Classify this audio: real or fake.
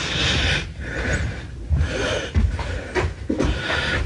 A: fake